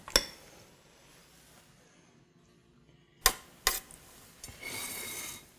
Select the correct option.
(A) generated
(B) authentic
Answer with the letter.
B